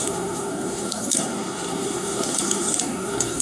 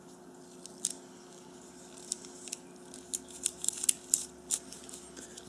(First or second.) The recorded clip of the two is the second